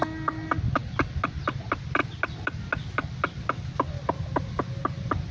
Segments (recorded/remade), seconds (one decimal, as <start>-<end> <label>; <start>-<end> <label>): 0.0-5.3 recorded